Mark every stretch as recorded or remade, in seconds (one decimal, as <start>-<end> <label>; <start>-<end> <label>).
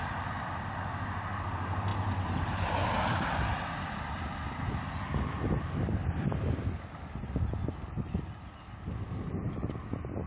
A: 0.0-10.3 recorded